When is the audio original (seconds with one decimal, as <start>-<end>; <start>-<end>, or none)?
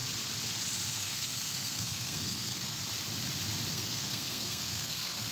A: 0.0-0.9; 2.8-3.7